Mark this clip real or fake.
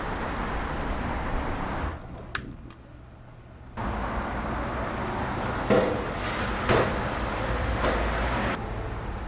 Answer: real